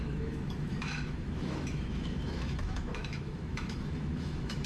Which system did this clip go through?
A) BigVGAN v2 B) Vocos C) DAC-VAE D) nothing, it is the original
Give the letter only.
C